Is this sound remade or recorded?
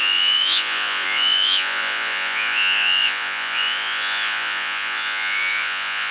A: remade